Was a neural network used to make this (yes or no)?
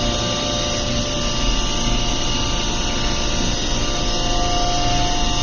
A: no